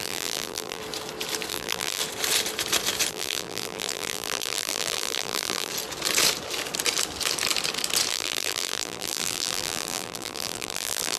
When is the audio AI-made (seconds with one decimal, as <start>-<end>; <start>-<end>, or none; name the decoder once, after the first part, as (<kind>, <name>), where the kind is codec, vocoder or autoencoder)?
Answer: 0.0-0.8 (vocoder, BigVGAN v2); 1.5-2.0; 3.1-5.7; 8.1-11.2